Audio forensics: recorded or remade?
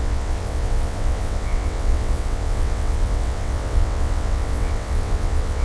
remade